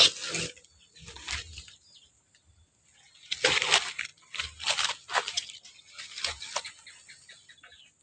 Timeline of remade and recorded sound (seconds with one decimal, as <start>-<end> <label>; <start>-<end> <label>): 0.0-8.0 recorded